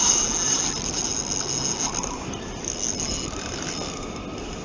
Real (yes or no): yes